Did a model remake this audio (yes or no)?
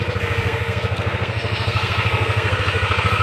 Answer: yes